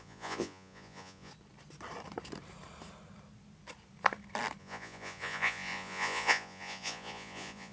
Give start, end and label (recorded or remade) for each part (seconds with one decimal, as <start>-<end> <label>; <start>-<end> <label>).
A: 0.0-1.3 remade; 1.3-4.6 recorded; 4.6-7.7 remade